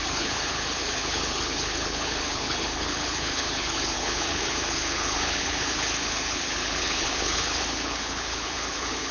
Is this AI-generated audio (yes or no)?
yes